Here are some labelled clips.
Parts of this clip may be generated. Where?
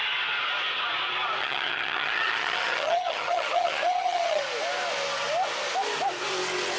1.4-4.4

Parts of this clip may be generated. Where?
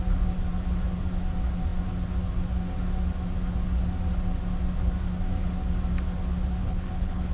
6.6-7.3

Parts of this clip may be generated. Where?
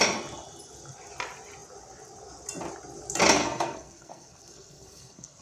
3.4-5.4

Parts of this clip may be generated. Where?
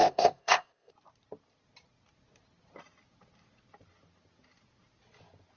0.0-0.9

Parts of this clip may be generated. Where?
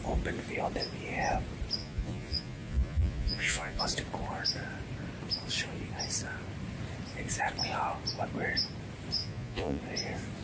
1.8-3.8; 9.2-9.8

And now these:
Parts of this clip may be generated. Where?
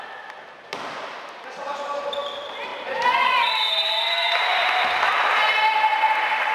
2.7-5.4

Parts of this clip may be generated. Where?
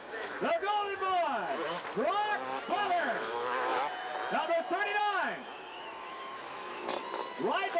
0.0-1.0; 2.7-3.7; 5.0-6.9